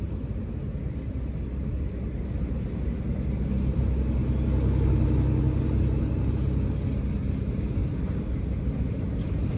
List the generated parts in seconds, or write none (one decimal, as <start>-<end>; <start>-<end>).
none